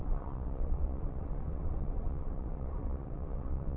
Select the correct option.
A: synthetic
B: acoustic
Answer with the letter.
A